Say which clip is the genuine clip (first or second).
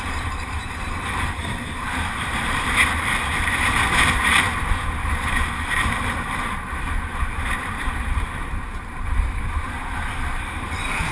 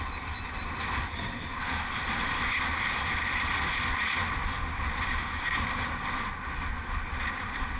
second